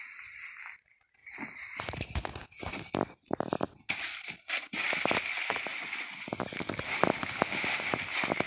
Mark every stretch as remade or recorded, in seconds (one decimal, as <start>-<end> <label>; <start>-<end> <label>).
0.0-1.2 recorded; 1.2-1.8 remade; 1.8-2.4 recorded; 2.4-3.6 remade; 3.6-8.5 recorded